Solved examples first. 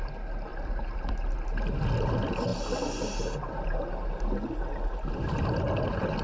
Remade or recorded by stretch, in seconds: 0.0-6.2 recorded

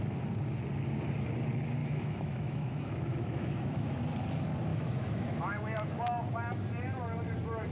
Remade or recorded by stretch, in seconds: 0.0-1.8 recorded; 1.8-4.0 remade; 4.0-4.7 recorded; 4.7-5.9 remade; 5.9-7.7 recorded

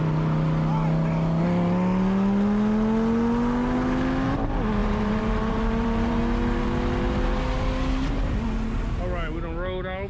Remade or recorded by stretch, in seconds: 0.0-4.8 recorded; 4.8-6.2 remade; 6.2-10.1 recorded

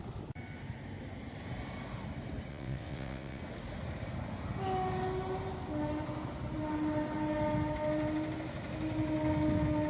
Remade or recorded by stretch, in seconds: 0.0-2.5 recorded; 2.5-3.4 remade; 3.4-9.9 recorded

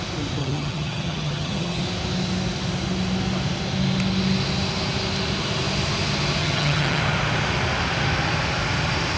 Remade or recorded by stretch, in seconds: 0.0-0.4 recorded; 0.4-1.8 remade; 1.8-6.4 recorded; 6.4-7.0 remade; 7.0-9.2 recorded